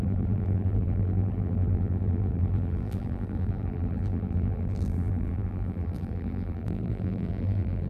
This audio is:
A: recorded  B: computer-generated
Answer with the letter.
B